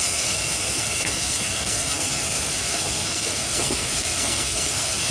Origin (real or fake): fake